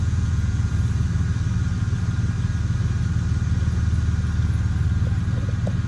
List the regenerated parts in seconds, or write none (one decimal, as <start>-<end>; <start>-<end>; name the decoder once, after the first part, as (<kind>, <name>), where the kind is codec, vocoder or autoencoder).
0.0-0.7 (vocoder, Vocos)